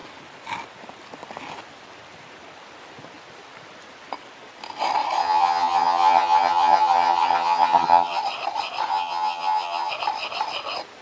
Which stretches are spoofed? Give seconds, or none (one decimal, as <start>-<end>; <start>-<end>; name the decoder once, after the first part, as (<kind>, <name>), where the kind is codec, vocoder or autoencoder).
5.2-8.2 (vocoder, HiFi-GAN); 8.9-9.9